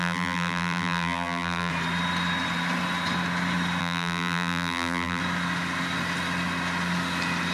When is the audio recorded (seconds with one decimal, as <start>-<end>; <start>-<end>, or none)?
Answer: 1.7-3.8; 5.2-7.5